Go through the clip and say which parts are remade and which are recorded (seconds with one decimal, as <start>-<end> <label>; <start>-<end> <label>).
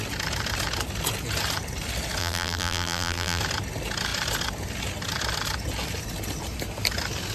0.0-2.2 recorded; 2.2-3.4 remade; 3.4-7.3 recorded